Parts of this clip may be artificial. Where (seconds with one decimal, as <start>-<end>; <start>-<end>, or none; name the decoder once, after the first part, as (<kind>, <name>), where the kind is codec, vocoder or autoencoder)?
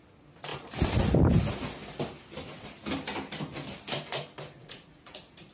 4.6-5.5 (vocoder, Vocos)